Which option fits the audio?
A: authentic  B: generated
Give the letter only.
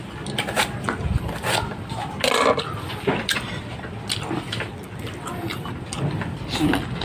A